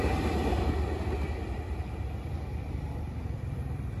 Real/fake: fake